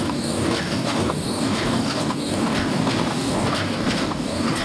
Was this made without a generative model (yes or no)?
no